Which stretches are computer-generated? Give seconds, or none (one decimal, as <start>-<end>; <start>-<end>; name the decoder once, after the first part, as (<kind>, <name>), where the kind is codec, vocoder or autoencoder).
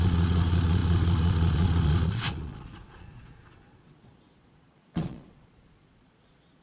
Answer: 0.0-6.6 (vocoder, Vocos)